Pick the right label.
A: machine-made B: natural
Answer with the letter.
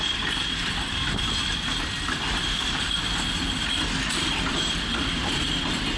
B